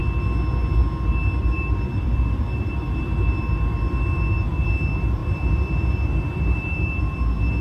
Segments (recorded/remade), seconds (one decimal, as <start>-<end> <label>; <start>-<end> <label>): 0.0-1.4 recorded; 1.4-4.7 remade; 4.7-5.2 recorded; 5.2-7.0 remade; 7.0-7.6 recorded